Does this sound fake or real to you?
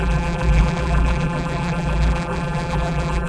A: fake